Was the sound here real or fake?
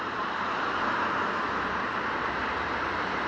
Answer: real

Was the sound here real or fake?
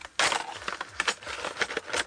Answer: real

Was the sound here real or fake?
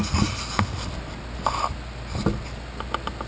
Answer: real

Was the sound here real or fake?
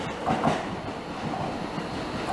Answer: real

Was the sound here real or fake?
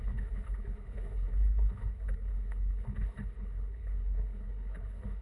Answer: fake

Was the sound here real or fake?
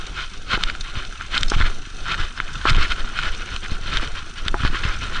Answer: real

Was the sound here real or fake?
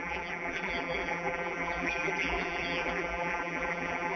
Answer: fake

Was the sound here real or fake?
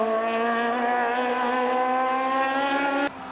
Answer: real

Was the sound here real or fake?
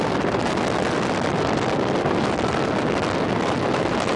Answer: real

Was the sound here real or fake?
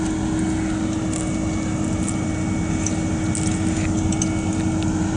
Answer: real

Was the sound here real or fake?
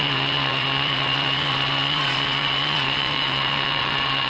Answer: fake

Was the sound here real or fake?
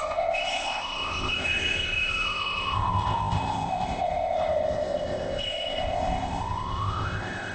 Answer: fake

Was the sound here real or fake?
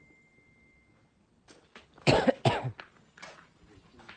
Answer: real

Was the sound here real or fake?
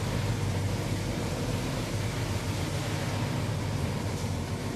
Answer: real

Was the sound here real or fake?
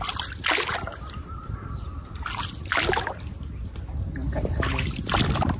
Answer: real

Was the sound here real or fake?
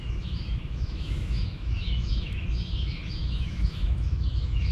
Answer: fake